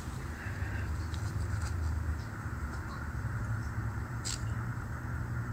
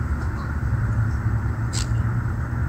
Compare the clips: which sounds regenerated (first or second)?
first